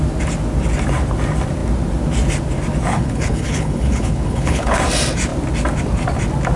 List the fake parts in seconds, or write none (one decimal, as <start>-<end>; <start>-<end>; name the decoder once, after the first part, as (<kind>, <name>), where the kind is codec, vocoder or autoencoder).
2.9-4.8 (codec, HILCodec)